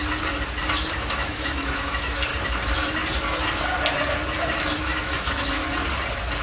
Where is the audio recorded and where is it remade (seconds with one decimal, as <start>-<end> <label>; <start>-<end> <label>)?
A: 0.0-0.9 recorded; 0.9-2.3 remade; 2.3-4.8 recorded; 4.8-5.6 remade; 5.6-6.4 recorded

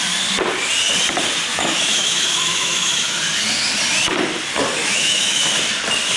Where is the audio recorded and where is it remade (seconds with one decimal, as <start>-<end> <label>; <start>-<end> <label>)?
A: 0.0-1.5 recorded; 1.5-3.2 remade; 3.2-4.8 recorded; 4.8-5.4 remade; 5.4-6.2 recorded

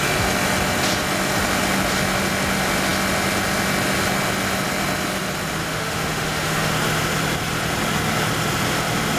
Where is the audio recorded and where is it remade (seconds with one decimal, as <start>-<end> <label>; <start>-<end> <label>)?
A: 0.0-5.6 recorded; 5.6-6.7 remade; 6.7-9.2 recorded

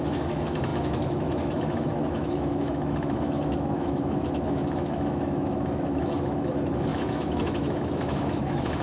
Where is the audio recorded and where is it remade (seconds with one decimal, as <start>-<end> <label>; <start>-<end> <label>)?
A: 0.0-8.8 remade

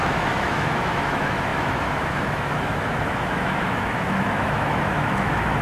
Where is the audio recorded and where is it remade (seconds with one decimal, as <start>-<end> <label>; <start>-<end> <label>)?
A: 0.0-5.6 remade

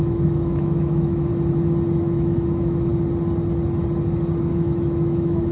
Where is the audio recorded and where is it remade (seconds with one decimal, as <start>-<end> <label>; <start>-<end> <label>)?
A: 0.0-1.3 remade; 1.3-2.0 recorded; 2.0-2.9 remade; 2.9-4.4 recorded; 4.4-5.5 remade

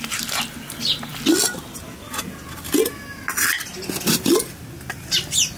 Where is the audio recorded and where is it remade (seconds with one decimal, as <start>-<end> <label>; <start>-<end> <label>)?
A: 0.0-5.6 recorded